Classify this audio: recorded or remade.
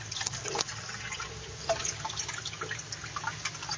recorded